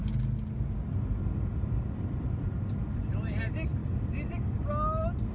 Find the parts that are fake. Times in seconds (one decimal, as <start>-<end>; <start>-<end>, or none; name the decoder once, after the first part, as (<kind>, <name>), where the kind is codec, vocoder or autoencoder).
none